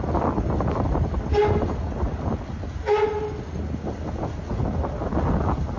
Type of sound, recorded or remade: recorded